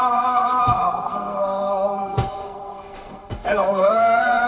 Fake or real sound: fake